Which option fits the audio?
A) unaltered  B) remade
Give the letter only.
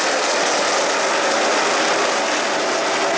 A